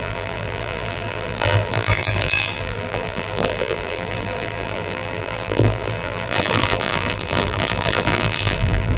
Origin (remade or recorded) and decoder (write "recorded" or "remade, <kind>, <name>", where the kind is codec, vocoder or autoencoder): remade, vocoder, BigVGAN v2